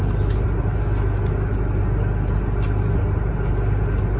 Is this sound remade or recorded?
recorded